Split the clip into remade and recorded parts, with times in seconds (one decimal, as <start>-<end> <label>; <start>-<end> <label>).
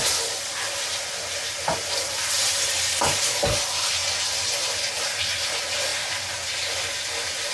0.0-7.5 recorded